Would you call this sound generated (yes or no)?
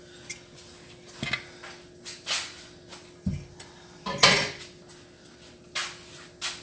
no